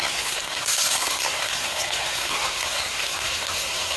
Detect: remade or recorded remade